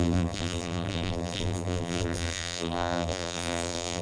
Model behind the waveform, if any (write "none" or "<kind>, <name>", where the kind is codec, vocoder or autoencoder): vocoder, BigVGAN v2